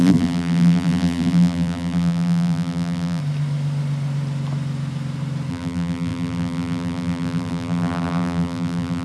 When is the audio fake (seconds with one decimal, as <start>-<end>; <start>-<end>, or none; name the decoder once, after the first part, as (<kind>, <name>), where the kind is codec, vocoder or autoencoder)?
0.0-3.2 (vocoder, BigVGAN v2); 5.5-9.0